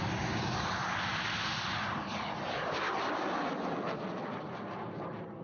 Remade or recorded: recorded